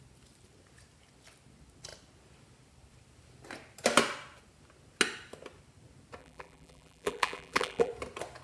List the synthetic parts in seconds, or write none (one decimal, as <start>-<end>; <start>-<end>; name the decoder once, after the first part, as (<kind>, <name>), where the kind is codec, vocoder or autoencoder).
6.2-7.9 (vocoder, BigVGAN v2)